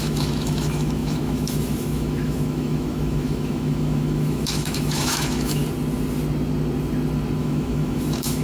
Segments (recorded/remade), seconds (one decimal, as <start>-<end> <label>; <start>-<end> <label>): 0.0-5.6 remade; 5.6-7.4 recorded; 7.4-8.4 remade